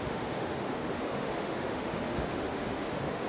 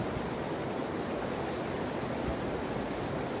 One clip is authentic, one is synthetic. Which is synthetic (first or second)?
first